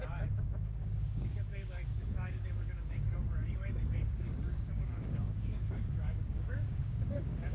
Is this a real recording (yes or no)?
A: no